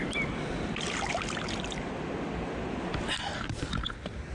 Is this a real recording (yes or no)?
yes